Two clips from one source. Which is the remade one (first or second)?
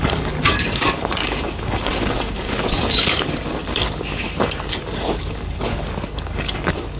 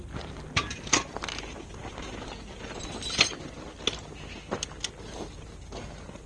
first